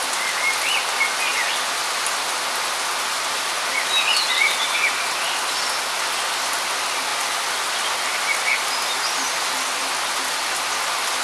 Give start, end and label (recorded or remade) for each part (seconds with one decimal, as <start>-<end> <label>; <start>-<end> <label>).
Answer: 0.0-7.1 recorded; 7.1-9.3 remade; 9.3-11.2 recorded